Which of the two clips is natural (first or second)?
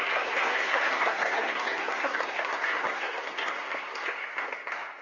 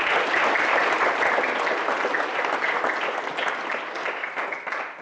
second